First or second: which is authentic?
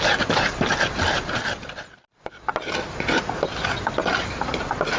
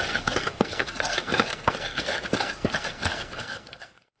first